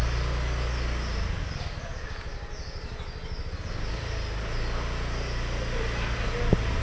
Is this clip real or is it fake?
real